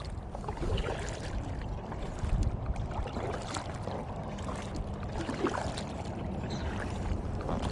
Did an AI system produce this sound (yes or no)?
no